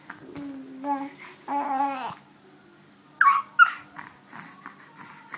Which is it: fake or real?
real